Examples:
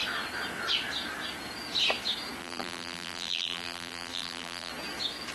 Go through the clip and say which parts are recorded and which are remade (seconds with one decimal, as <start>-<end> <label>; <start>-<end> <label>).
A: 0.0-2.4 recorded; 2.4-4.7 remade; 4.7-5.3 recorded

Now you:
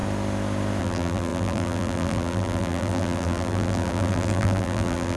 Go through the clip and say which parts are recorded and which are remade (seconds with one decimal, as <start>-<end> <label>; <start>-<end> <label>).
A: 0.0-0.8 recorded; 0.8-5.2 remade

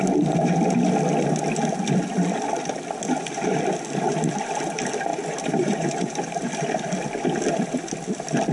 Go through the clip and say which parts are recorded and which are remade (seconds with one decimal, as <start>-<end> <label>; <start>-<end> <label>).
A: 0.0-5.1 recorded; 5.1-6.5 remade; 6.5-8.5 recorded

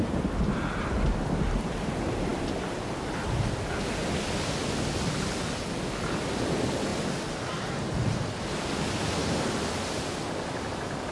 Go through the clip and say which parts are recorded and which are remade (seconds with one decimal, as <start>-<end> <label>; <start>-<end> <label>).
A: 0.0-2.3 recorded; 2.3-3.4 remade; 3.4-11.1 recorded

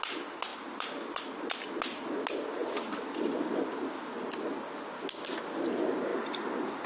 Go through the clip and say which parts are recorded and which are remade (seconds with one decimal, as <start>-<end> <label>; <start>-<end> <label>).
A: 0.0-0.5 recorded; 0.5-1.7 remade; 1.7-2.6 recorded; 2.6-4.0 remade; 4.0-6.1 recorded; 6.1-6.9 remade